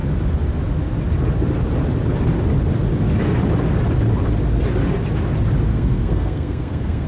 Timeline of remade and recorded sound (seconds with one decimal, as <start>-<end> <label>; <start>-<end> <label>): 0.0-5.7 recorded; 5.7-7.1 remade